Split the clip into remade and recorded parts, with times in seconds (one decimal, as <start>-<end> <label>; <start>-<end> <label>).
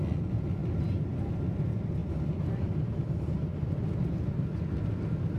0.0-5.4 recorded